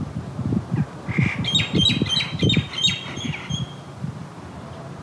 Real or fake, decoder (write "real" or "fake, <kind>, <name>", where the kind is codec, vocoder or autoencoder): real